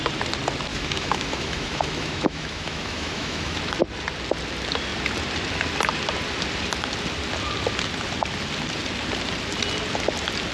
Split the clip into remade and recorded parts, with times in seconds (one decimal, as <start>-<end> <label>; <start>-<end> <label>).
0.0-0.7 recorded; 0.7-3.6 remade; 3.6-10.5 recorded